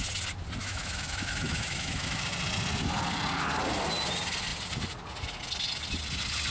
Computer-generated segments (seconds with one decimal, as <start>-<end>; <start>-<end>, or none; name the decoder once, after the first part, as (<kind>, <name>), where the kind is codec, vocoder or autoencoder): 0.6-2.2 (autoencoder, DAC-VAE)